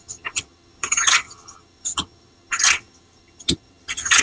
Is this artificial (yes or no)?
yes